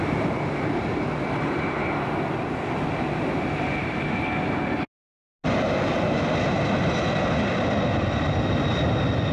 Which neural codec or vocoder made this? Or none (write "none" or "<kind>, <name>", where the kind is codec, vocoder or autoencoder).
none